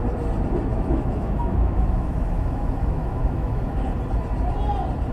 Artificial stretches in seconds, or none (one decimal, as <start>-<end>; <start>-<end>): 0.7-3.8